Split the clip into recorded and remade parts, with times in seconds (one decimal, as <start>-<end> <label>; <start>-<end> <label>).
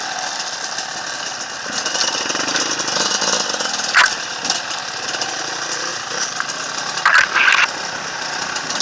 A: 0.0-8.8 recorded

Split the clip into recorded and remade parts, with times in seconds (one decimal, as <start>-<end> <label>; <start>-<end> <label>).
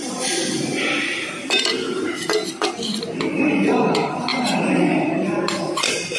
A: 0.0-1.7 remade; 1.7-4.3 recorded; 4.3-5.1 remade; 5.1-6.2 recorded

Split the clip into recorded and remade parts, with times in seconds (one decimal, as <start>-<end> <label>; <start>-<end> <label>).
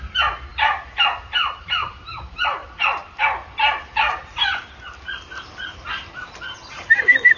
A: 0.0-7.4 recorded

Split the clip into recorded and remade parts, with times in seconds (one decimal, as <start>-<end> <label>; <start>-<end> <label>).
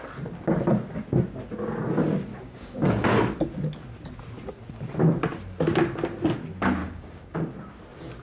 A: 0.0-2.3 recorded; 2.3-3.1 remade; 3.1-6.8 recorded; 6.8-7.5 remade; 7.5-8.2 recorded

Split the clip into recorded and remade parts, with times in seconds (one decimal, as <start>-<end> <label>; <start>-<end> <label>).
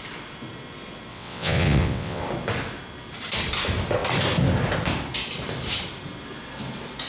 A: 0.0-1.1 recorded; 1.1-2.2 remade; 2.2-7.1 recorded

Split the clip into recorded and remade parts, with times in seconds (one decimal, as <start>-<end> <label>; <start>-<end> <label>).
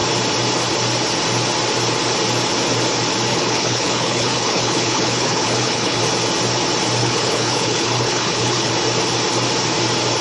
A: 0.0-3.3 recorded; 3.3-6.0 remade; 6.0-7.0 recorded; 7.0-8.7 remade; 8.7-10.2 recorded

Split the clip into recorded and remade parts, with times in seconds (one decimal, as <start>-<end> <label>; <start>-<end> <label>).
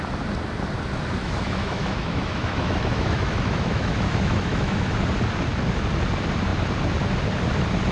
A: 0.0-1.2 recorded; 1.2-5.0 remade; 5.0-7.9 recorded